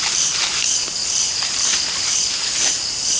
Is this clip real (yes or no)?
no